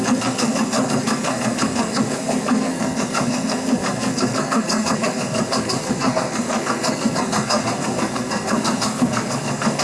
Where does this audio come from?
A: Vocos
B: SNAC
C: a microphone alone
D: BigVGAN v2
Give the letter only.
B